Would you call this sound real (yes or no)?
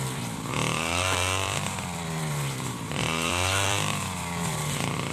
no